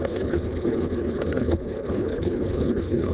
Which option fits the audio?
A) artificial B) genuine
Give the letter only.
A